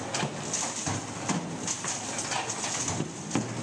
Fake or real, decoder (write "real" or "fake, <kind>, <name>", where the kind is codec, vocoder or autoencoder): real